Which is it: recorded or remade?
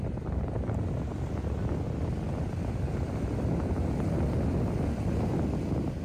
recorded